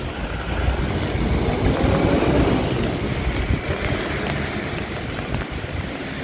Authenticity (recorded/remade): recorded